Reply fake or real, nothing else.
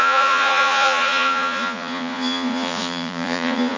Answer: fake